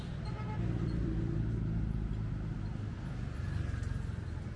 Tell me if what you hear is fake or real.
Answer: real